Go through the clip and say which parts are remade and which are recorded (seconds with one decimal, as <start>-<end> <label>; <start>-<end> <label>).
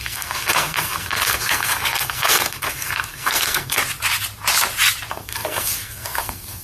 0.0-3.8 remade; 3.8-5.1 recorded; 5.1-6.6 remade